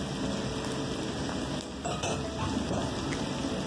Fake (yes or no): no